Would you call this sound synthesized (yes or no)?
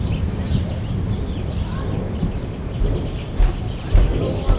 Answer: no